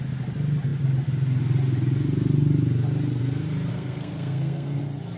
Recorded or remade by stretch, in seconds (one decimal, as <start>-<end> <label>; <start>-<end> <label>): 0.0-3.7 recorded; 3.7-4.8 remade; 4.8-5.2 recorded